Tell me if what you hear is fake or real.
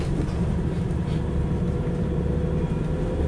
real